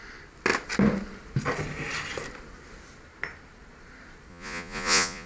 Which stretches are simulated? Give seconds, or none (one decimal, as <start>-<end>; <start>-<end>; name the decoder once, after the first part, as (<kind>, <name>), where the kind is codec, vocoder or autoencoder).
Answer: 4.3-5.3 (vocoder, Vocos)